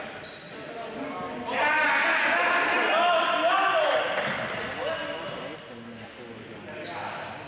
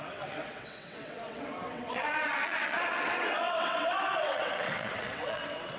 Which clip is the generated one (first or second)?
second